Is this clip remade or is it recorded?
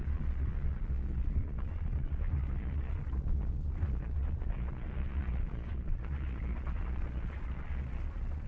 remade